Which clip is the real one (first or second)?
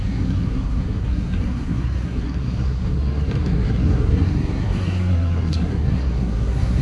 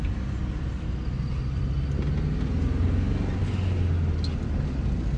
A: second